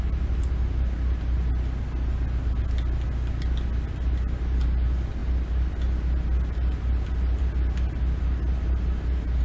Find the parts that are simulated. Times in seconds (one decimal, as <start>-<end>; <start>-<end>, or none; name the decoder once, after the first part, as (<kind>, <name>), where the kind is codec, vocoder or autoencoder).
none